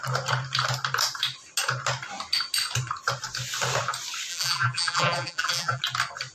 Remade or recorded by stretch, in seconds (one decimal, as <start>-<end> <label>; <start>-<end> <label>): 0.0-4.3 recorded; 4.3-5.8 remade; 5.8-6.3 recorded